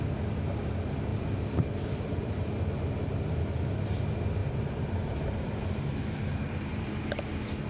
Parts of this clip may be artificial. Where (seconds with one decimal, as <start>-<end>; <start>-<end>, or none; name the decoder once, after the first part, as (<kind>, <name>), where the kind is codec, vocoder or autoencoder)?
1.1-2.6 (vocoder, BigVGAN v2); 4.4-7.1